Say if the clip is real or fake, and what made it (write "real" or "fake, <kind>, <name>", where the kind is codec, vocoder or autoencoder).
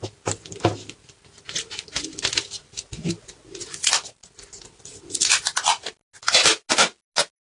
real